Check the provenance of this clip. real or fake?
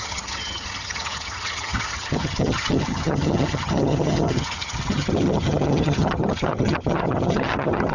fake